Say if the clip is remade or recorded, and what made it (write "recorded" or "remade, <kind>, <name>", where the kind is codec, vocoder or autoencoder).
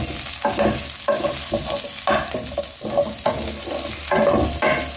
recorded